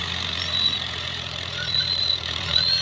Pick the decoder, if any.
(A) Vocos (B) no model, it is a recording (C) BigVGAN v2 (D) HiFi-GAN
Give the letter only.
A